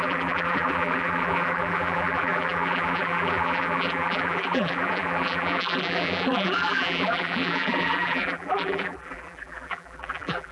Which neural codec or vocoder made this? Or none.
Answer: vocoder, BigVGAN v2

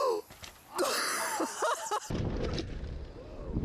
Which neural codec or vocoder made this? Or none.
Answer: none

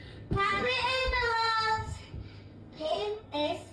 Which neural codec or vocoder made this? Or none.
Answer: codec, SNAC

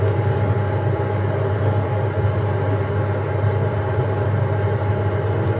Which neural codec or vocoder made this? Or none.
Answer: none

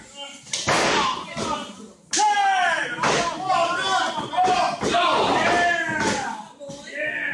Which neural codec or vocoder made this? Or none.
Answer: none